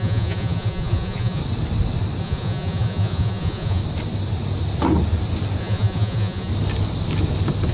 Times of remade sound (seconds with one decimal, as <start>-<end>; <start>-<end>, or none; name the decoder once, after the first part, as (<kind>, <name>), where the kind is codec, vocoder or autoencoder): 0.0-1.4 (vocoder, Vocos); 2.2-3.8; 5.6-6.5